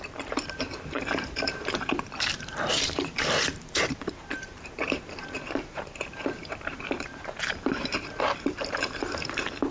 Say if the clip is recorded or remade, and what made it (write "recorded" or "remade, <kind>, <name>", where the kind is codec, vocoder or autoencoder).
remade, vocoder, BigVGAN v2